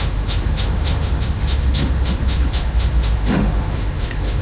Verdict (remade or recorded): remade